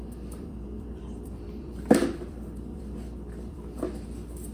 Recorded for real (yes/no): no